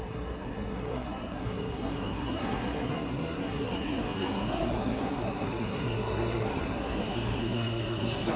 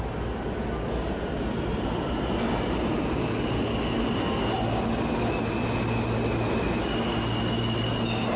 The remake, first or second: first